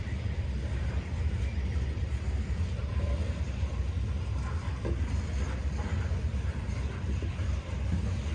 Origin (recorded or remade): remade